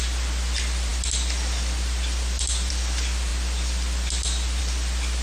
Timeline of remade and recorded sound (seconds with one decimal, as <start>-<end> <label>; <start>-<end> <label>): 0.0-5.2 recorded